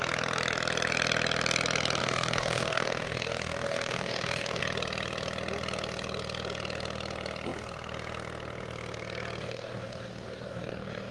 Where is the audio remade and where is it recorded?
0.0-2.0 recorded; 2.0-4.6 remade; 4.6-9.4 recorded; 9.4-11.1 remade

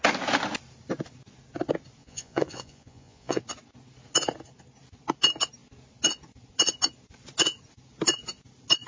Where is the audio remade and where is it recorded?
0.0-2.0 recorded; 2.0-3.4 remade; 3.4-8.9 recorded

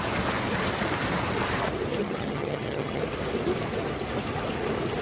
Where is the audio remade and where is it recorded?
0.0-2.0 recorded; 2.0-3.0 remade; 3.0-5.0 recorded

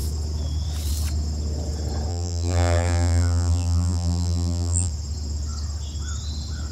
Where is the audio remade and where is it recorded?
0.0-2.1 recorded; 2.1-4.9 remade; 4.9-6.7 recorded

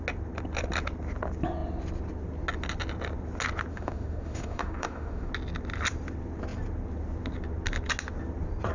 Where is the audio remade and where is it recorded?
0.0-3.7 recorded; 3.7-5.3 remade; 5.3-8.7 recorded